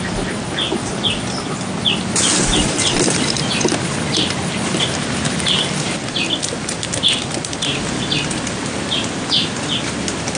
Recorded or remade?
recorded